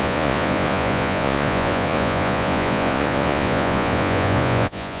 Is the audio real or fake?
fake